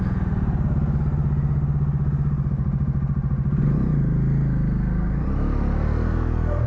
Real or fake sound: real